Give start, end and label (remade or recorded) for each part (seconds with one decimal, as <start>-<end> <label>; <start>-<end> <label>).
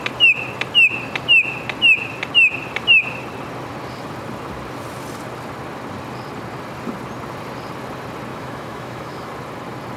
0.0-8.3 recorded; 8.3-9.3 remade; 9.3-10.0 recorded